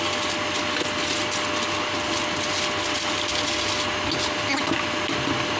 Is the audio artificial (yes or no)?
no